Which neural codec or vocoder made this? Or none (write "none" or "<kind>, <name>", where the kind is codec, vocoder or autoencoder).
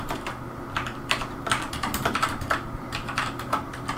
vocoder, BigVGAN v2